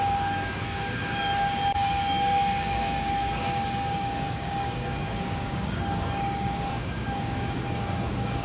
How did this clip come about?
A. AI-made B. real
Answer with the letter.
A